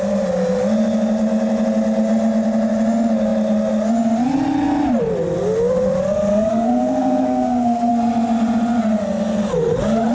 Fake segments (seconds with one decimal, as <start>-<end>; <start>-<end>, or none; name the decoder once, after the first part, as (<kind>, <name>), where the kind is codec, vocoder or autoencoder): 6.3-7.9 (codec, SNAC)